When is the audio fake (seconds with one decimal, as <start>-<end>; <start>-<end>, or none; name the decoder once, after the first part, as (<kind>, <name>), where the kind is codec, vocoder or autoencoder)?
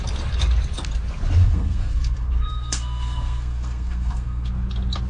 1.4-4.5 (codec, SNAC)